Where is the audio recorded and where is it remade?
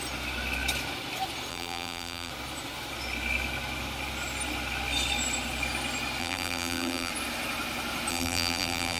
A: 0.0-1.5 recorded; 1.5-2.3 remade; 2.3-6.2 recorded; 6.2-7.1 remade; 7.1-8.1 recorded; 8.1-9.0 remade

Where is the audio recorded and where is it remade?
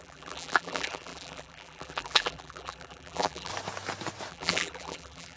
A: 0.0-3.5 remade; 3.5-4.3 recorded; 4.3-5.4 remade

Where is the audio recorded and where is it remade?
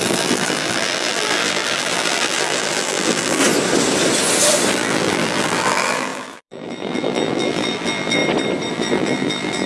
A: 0.0-3.4 remade; 3.4-4.7 recorded; 4.7-8.2 remade; 8.2-8.7 recorded; 8.7-9.7 remade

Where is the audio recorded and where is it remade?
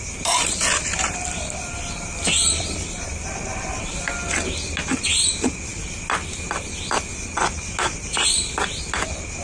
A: 0.0-2.4 recorded; 2.4-3.7 remade; 3.7-9.4 recorded